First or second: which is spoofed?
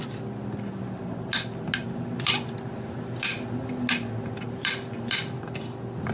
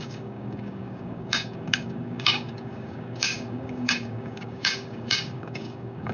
second